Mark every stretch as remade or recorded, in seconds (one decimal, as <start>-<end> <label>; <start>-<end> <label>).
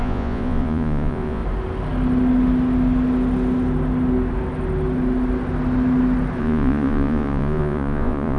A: 0.0-1.4 remade; 1.4-6.4 recorded; 6.4-8.4 remade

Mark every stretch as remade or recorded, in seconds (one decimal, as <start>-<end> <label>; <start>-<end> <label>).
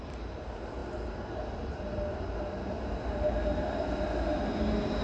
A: 0.0-5.0 recorded